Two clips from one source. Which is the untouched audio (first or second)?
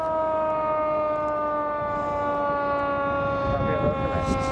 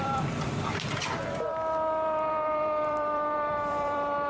first